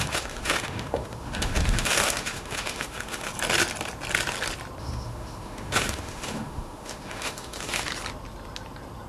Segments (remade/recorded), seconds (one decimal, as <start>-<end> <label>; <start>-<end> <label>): 0.0-3.3 remade; 3.3-4.8 recorded; 4.8-7.9 remade; 7.9-9.1 recorded